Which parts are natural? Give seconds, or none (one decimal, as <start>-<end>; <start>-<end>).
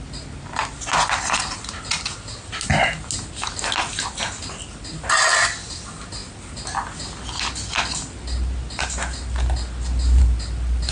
0.0-10.9